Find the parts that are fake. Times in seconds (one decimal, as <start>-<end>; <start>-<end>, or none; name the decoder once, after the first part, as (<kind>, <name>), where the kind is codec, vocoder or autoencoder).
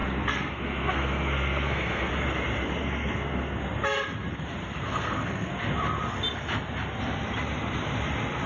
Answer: 0.0-2.1 (codec, SNAC); 2.8-3.6; 4.9-5.5